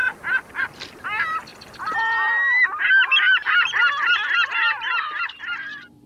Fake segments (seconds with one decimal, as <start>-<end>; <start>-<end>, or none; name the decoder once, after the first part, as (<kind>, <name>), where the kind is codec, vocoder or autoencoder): 0.6-1.5 (vocoder, BigVGAN v2); 5.2-6.1